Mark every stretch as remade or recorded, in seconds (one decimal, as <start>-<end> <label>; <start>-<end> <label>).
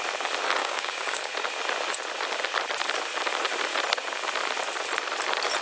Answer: 0.0-0.6 recorded; 0.6-1.3 remade; 1.3-5.6 recorded